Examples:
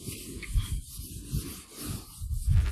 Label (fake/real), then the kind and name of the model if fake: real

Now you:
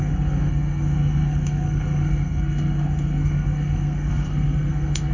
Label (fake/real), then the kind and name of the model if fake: fake, codec, SNAC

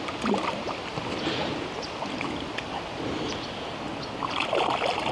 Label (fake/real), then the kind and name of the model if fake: real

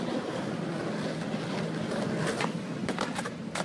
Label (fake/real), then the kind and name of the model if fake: real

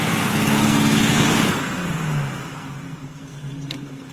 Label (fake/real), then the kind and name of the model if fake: fake, codec, SNAC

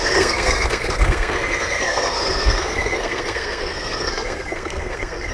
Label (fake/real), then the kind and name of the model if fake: fake, codec, SNAC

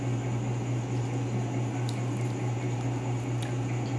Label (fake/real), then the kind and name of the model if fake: real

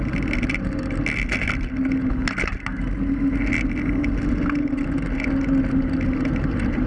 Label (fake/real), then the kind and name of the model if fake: real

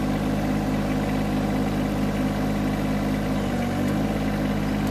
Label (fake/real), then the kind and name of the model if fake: real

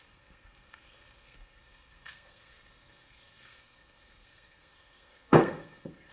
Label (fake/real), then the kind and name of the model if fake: fake, codec, SNAC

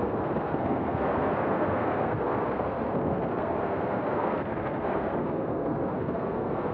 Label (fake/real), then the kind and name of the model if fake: fake, codec, SNAC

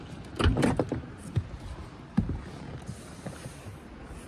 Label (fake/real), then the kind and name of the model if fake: real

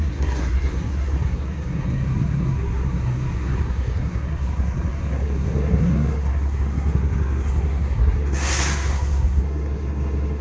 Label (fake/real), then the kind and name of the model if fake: fake, codec, SNAC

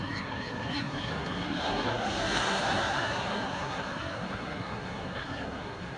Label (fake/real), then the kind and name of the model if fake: fake, codec, SNAC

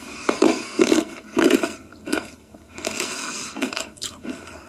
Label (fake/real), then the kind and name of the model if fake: fake, codec, SNAC